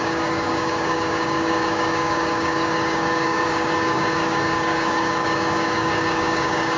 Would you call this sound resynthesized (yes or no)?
yes